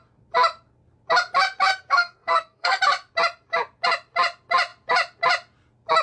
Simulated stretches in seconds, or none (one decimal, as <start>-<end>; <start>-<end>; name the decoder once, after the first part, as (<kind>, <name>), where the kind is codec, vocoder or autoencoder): 1.7-2.8 (codec, SNAC)